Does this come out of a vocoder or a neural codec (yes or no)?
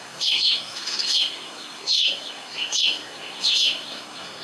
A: yes